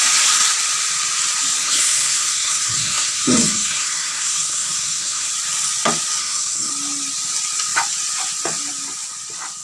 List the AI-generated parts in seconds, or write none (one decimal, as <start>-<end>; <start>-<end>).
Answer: 1.6-5.3; 6.2-6.7